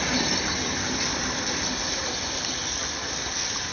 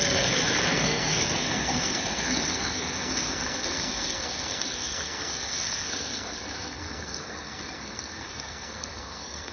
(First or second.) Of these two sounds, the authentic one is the first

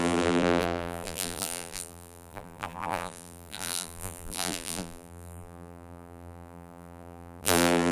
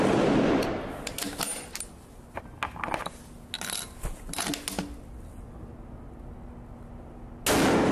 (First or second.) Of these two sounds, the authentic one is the second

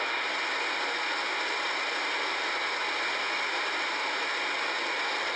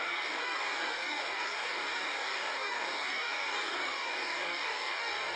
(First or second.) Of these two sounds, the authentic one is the first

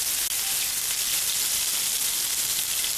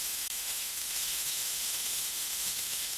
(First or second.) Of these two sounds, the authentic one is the first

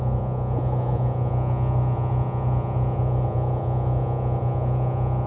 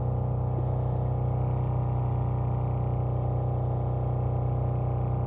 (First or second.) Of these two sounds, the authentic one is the second